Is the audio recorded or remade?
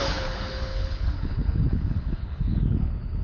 remade